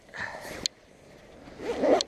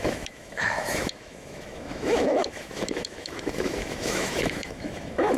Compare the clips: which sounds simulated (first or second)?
second